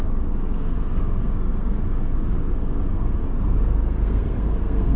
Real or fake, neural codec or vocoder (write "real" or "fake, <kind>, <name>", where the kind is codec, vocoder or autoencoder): fake, codec, SNAC